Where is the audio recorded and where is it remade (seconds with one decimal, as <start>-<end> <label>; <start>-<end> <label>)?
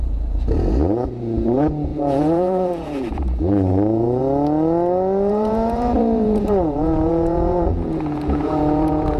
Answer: 0.0-4.2 remade; 4.2-5.3 recorded; 5.3-9.2 remade